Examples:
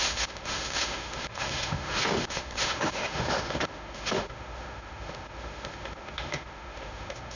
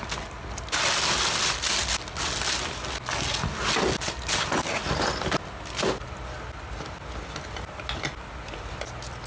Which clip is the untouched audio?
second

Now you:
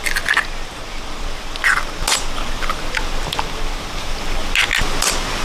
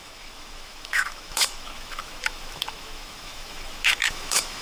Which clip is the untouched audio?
first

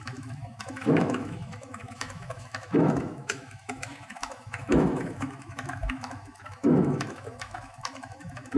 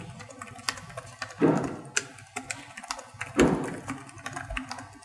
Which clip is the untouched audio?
second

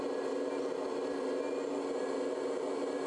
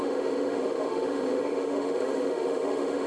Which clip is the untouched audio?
first